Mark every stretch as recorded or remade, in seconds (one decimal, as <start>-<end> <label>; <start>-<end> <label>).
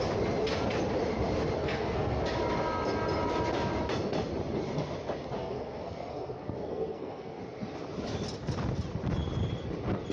0.0-1.6 recorded; 1.6-2.2 remade; 2.2-5.4 recorded; 5.4-7.4 remade; 7.4-10.1 recorded